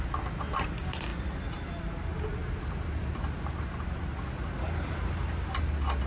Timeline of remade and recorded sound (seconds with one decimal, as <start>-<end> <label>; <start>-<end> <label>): 0.0-6.1 recorded